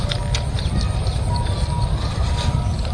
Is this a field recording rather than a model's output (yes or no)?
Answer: yes